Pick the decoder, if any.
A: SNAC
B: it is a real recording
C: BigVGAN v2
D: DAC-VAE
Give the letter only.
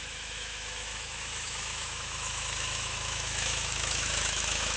D